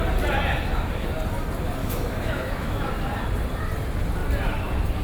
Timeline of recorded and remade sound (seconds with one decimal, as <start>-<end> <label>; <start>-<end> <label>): 0.0-1.8 recorded; 1.8-2.9 remade; 2.9-5.0 recorded